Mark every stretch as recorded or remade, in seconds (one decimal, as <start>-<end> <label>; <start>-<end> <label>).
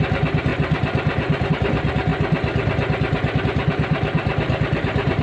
0.0-5.2 recorded